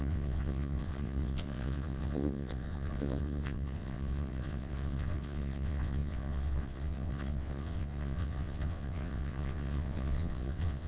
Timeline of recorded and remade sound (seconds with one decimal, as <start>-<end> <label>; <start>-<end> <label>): 0.0-10.9 remade